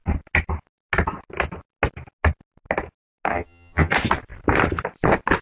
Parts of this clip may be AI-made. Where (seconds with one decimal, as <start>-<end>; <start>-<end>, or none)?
3.3-3.9